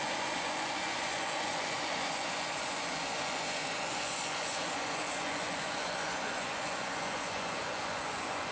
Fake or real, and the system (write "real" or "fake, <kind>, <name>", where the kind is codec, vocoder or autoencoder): fake, vocoder, Vocos